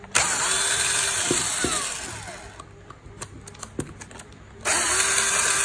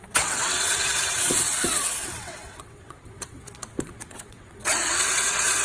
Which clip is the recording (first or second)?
first